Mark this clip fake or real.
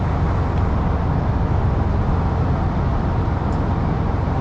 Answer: real